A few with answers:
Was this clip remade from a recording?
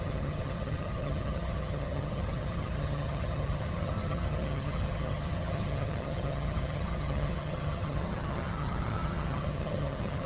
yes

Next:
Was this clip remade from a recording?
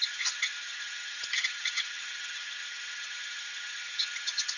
yes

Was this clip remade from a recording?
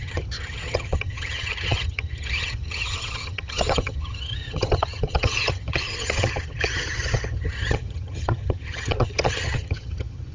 yes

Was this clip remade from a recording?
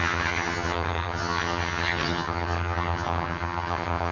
yes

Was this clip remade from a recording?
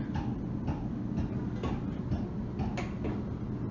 no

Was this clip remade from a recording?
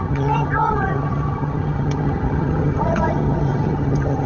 yes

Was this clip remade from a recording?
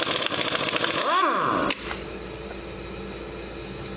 no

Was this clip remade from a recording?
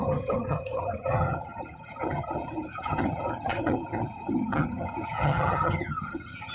yes